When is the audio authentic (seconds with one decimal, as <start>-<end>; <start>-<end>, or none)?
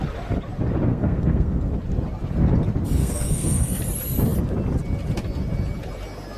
0.0-0.9; 1.7-3.0; 3.8-6.4